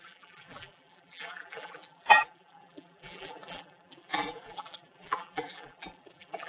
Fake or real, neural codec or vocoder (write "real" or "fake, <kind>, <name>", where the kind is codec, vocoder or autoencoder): fake, vocoder, BigVGAN v2